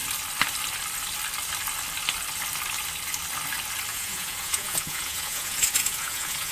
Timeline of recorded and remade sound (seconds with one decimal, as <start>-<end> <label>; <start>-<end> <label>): 0.0-3.9 recorded; 3.9-6.5 remade